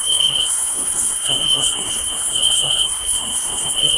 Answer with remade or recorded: remade